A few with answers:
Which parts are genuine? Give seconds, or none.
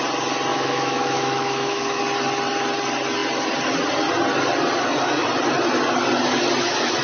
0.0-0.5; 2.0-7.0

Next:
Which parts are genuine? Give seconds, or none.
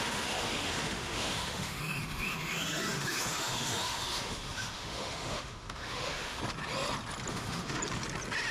6.4-7.3; 7.8-8.5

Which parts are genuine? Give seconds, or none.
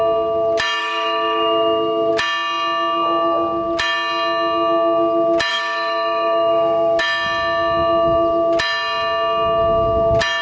0.0-0.8; 2.1-5.5; 7.0-10.4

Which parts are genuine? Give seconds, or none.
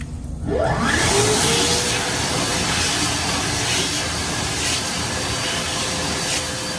0.0-6.8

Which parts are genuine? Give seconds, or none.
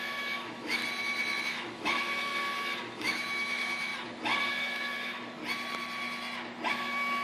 0.8-1.4; 2.3-2.9; 3.9-4.5; 5.4-6.7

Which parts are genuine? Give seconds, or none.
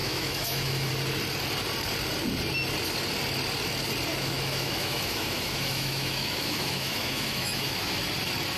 0.9-4.1; 8.0-8.6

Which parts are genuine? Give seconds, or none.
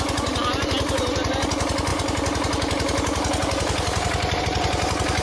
0.0-5.2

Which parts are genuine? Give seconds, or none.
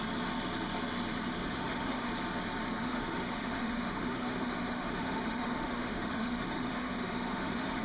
0.0-1.4; 2.1-2.8